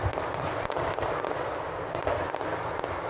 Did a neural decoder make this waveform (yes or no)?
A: no